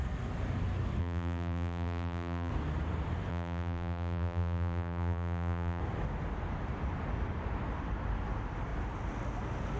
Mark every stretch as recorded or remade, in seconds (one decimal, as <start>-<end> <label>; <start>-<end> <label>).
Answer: 0.0-1.0 recorded; 1.0-2.5 remade; 2.5-3.3 recorded; 3.3-5.8 remade; 5.8-9.8 recorded